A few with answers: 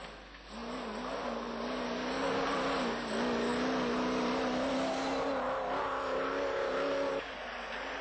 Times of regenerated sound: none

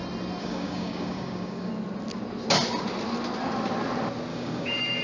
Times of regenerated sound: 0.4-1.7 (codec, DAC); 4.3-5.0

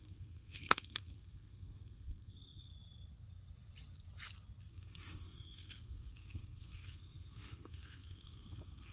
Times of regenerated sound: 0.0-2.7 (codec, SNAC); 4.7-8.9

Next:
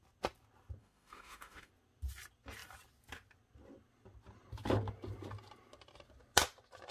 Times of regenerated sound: 0.8-1.7 (autoencoder, DAC-VAE)

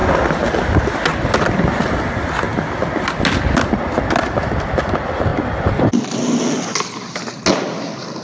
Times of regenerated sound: none

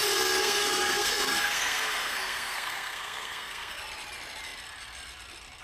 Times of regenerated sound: 0.4-3.8 (codec, SNAC)

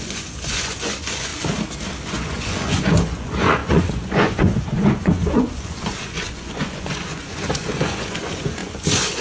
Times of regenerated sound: 0.0-1.3 (vocoder, Vocos); 2.1-9.2

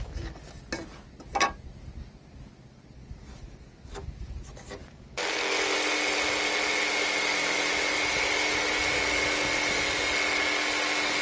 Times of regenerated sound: none